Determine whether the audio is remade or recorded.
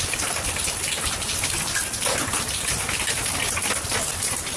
recorded